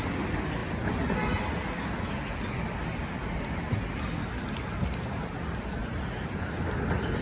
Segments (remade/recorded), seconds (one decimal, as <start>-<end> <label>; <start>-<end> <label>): 0.0-5.8 recorded; 5.8-6.5 remade; 6.5-7.2 recorded